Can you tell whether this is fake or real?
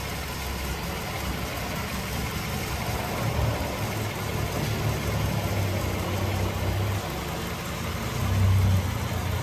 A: real